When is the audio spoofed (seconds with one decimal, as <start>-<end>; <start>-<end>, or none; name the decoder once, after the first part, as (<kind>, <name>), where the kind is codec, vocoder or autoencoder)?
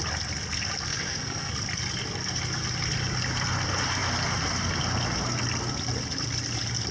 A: 0.9-1.5 (codec, SNAC)